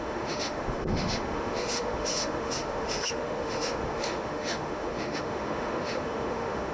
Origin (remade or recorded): remade